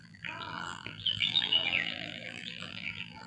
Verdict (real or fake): fake